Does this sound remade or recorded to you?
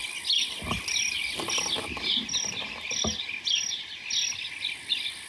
recorded